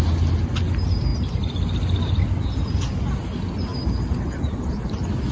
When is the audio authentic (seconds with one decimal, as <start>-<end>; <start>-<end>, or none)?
0.0-5.3